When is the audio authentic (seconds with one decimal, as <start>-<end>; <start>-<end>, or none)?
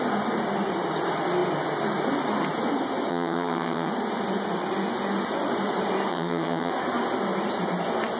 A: 0.0-3.1; 3.9-6.1; 6.7-8.2